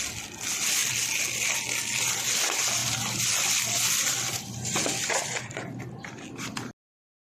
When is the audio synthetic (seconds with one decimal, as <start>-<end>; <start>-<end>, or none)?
2.8-5.8